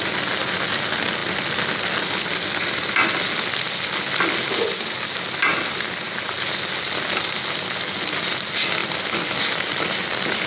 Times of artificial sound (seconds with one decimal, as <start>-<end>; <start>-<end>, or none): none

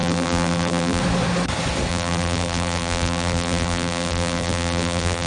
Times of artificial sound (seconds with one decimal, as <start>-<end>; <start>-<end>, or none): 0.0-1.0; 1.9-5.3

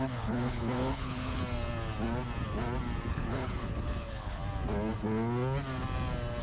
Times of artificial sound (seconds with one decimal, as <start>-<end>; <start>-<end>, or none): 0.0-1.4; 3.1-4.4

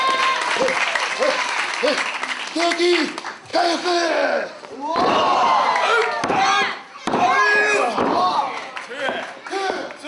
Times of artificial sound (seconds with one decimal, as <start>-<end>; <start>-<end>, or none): 3.5-8.7

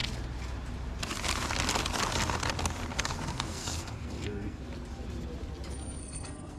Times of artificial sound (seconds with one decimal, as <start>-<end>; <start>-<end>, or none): 2.9-4.6; 6.0-6.6

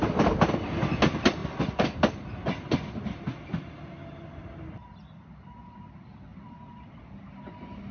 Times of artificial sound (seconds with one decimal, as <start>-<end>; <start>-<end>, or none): 6.3-7.2

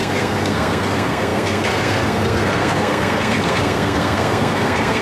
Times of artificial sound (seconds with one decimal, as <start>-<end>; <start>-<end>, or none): 0.0-5.0